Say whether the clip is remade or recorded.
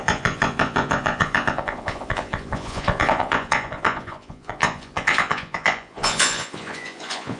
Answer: remade